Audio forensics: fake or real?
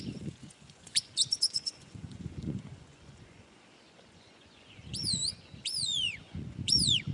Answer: fake